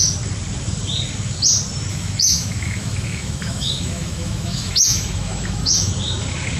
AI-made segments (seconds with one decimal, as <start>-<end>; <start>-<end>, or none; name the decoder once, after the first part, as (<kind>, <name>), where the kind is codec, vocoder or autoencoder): 1.9-5.9 (autoencoder, DAC-VAE)